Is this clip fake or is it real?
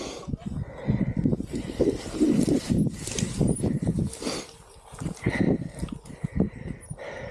real